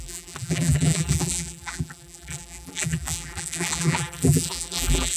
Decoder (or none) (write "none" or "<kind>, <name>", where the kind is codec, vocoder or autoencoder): vocoder, BigVGAN v2